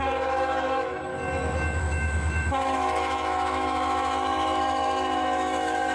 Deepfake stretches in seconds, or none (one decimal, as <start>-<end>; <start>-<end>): 0.0-1.1; 1.8-5.9